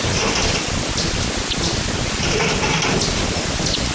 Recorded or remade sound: recorded